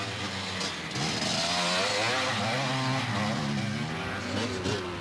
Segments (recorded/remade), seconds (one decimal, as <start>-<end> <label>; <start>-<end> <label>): 0.0-5.0 recorded